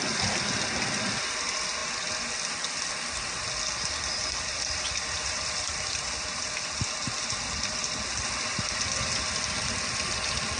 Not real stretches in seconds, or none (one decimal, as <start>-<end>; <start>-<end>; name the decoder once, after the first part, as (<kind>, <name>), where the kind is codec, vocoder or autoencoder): none